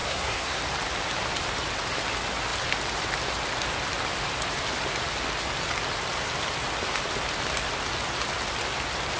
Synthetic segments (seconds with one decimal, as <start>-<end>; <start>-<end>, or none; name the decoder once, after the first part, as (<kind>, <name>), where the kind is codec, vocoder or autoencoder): 0.0-0.6 (codec, SNAC)